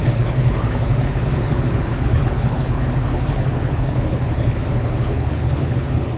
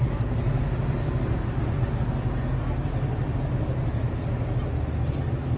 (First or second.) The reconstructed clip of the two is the first